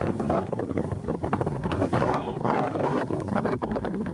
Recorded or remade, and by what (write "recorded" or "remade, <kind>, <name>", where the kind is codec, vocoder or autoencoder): remade, codec, SNAC